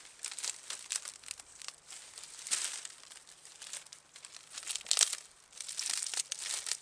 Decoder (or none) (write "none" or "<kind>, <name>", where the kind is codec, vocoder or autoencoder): none